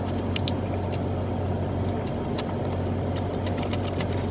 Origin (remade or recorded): recorded